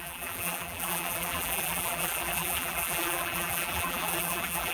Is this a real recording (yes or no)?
no